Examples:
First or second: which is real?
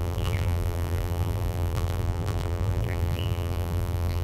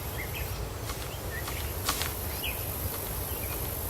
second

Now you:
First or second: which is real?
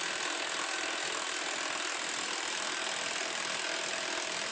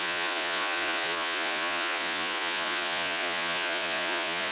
first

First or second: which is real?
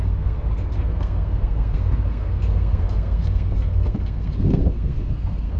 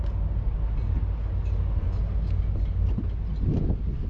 second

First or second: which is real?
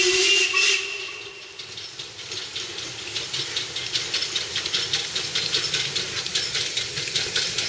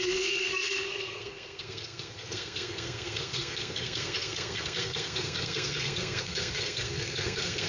first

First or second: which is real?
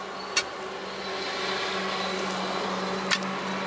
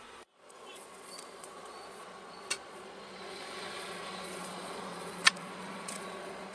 first